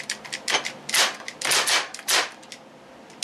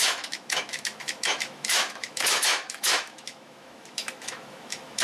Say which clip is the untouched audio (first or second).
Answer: first